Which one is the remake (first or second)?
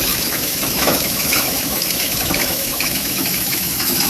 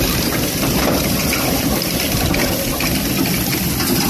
first